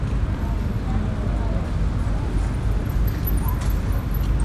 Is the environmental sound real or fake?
real